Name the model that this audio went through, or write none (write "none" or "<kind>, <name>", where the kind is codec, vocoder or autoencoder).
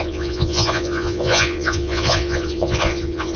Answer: vocoder, Vocos